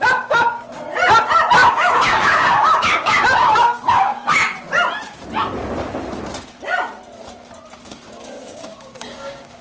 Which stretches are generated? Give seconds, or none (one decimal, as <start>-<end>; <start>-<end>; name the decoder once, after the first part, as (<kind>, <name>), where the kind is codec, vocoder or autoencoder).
0.0-0.5 (codec, DAC); 1.7-4.4; 7.8-9.6